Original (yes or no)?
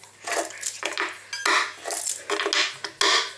yes